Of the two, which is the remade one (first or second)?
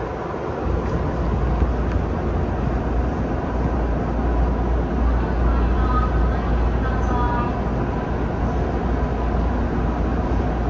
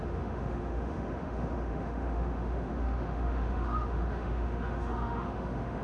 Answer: second